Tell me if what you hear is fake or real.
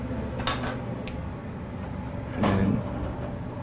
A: real